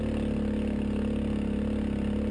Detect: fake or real real